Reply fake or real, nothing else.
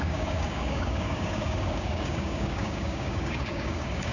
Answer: fake